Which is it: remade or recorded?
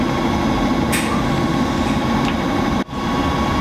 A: recorded